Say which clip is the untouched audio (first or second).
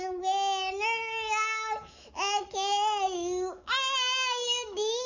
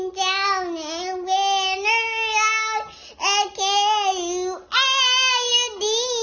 second